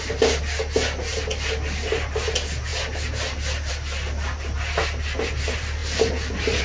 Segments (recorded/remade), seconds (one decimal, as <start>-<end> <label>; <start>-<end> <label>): 0.0-6.6 recorded